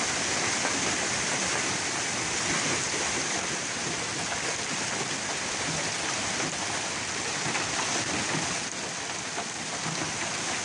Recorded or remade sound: recorded